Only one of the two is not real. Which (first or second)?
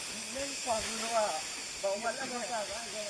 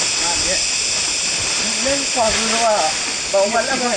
first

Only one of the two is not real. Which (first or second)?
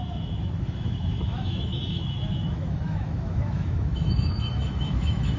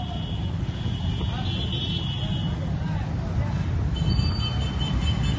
first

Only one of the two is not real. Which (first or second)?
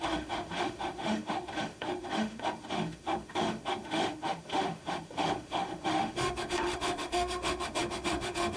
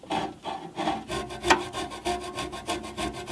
first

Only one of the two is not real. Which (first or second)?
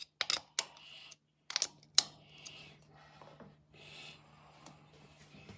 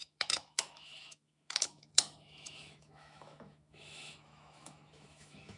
second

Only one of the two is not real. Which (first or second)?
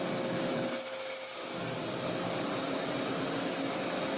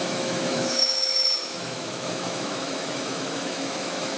second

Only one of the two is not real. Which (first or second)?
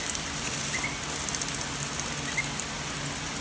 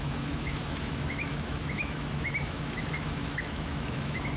second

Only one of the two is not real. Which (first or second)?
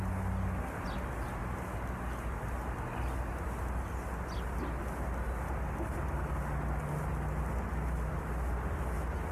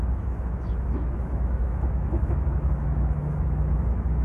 second